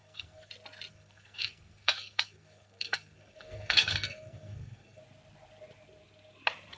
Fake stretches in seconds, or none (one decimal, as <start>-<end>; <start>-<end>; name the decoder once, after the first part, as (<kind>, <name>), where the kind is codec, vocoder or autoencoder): 0.0-0.5 (codec, SNAC); 0.9-5.0